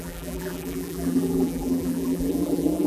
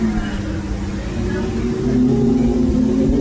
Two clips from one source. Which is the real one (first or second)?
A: second